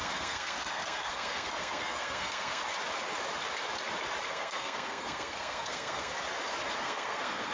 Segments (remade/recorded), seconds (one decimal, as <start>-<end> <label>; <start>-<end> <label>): 0.0-2.6 remade; 2.6-4.3 recorded; 4.3-6.1 remade; 6.1-6.8 recorded; 6.8-7.5 remade

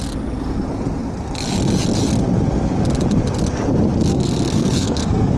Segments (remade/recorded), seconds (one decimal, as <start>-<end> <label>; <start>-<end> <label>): 0.0-4.1 recorded; 4.1-5.4 remade

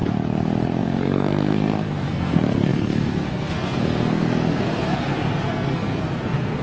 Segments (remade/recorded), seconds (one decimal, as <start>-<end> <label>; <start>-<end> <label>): 0.0-0.8 recorded; 0.8-6.6 remade

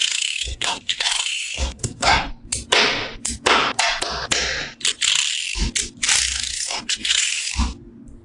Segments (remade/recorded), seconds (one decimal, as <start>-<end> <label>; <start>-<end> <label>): 0.0-2.3 remade; 2.3-6.5 recorded; 6.5-7.5 remade; 7.5-8.2 recorded

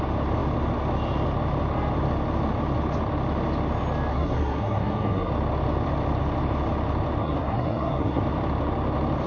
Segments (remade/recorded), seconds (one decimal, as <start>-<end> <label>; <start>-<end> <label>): 0.0-4.1 recorded; 4.1-5.3 remade; 5.3-7.2 recorded; 7.2-8.2 remade; 8.2-9.3 recorded

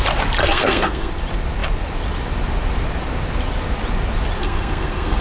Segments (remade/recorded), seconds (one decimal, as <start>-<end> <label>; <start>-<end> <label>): 0.0-0.4 recorded; 0.4-1.1 remade; 1.1-4.4 recorded; 4.4-5.2 remade